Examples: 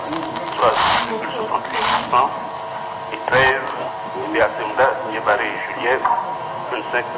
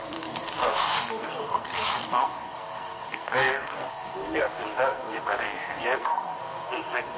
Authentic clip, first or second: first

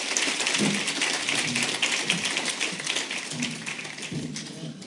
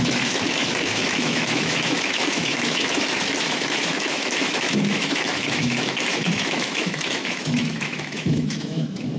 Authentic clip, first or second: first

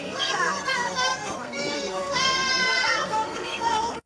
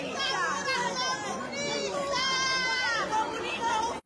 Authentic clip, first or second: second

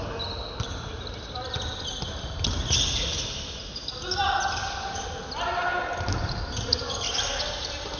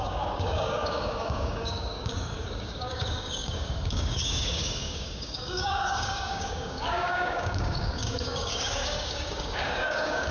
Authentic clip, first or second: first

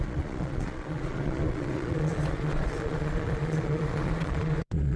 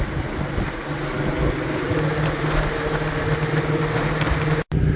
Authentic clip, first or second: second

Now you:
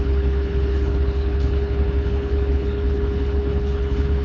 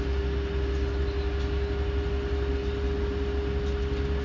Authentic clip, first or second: second